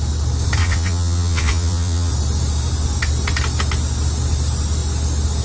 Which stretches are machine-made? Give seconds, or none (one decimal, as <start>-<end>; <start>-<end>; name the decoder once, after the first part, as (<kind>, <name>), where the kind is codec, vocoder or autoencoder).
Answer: 0.6-2.1 (vocoder, Vocos)